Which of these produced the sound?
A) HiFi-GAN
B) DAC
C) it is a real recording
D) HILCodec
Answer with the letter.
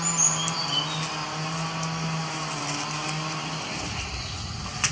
C